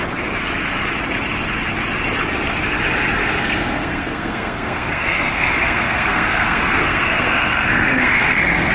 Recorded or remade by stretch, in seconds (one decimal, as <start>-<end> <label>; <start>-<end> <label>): 0.0-3.2 recorded; 3.2-8.7 remade